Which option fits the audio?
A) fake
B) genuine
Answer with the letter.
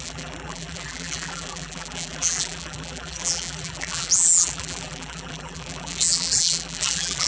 A